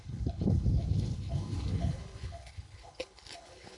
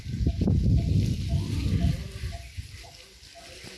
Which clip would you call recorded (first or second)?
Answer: second